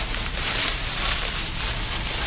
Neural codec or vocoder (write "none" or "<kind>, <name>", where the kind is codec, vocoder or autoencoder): none